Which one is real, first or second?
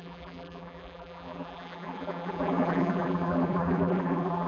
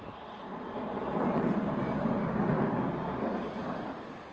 second